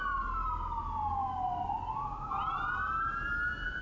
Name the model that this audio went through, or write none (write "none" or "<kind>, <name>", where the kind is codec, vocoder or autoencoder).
none